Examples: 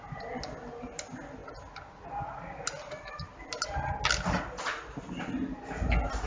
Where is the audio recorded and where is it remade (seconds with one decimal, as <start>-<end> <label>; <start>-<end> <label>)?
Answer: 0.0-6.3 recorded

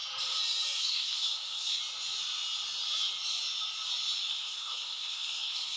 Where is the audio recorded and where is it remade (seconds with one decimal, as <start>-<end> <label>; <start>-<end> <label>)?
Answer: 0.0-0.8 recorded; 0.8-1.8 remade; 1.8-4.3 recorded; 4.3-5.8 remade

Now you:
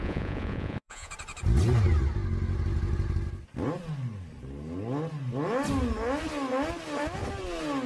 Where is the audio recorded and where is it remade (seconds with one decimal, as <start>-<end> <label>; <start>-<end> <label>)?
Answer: 0.0-1.1 remade; 1.1-7.9 recorded

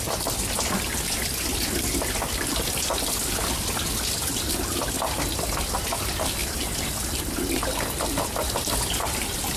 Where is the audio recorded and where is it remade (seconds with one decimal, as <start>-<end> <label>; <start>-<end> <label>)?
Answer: 0.0-9.6 recorded

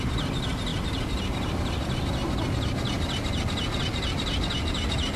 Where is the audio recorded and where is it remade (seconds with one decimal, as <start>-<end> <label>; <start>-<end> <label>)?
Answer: 0.0-5.2 recorded

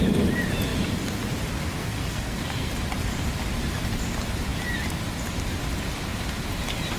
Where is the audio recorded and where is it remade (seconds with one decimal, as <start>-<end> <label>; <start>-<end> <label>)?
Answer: 0.0-1.8 recorded; 1.8-2.7 remade; 2.7-7.0 recorded

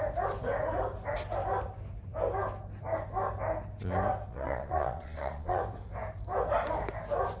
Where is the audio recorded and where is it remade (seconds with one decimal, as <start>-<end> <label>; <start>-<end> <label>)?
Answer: 0.0-4.3 recorded; 4.3-5.6 remade; 5.6-7.4 recorded